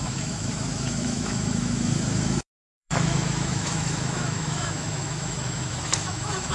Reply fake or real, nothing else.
fake